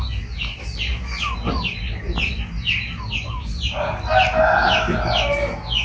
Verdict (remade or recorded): recorded